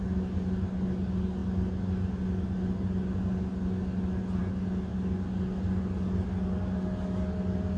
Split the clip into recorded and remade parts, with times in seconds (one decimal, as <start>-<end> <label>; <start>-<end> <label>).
0.0-7.8 recorded